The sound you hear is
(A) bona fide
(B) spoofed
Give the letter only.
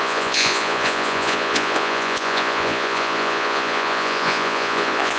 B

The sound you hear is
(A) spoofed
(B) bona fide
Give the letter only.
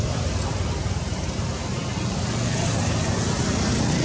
B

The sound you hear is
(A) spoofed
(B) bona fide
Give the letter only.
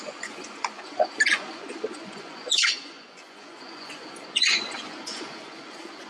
A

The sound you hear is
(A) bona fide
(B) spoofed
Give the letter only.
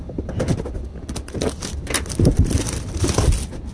A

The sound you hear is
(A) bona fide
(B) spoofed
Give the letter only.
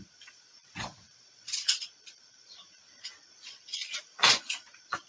B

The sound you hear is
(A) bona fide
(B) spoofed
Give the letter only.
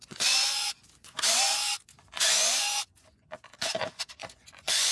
B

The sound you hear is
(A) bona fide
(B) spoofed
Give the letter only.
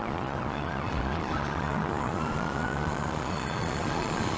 B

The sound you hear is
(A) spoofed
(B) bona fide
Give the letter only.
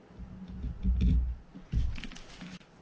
B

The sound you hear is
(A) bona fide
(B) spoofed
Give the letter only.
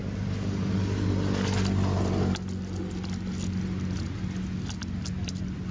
A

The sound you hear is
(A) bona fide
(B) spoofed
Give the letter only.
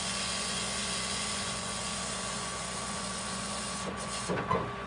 B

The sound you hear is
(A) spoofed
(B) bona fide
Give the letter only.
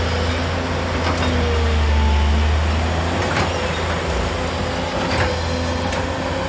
B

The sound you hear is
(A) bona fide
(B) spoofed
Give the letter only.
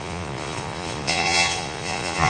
B